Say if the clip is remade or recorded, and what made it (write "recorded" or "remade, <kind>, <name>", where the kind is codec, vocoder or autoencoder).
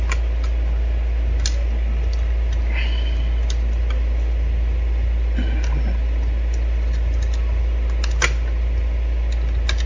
recorded